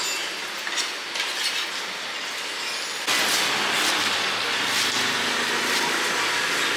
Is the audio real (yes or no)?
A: yes